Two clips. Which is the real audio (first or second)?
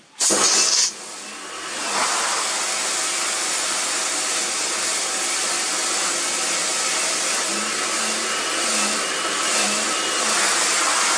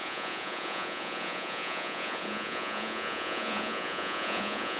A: first